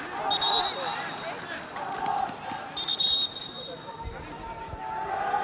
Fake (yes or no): no